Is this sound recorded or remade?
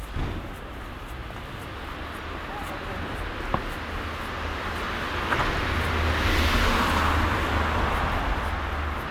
recorded